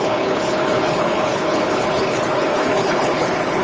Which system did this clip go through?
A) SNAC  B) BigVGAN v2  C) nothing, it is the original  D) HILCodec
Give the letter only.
D